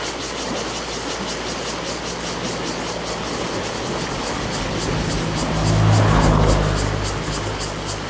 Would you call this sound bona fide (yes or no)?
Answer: yes